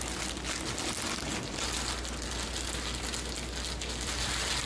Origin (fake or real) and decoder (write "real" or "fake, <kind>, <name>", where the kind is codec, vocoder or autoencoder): real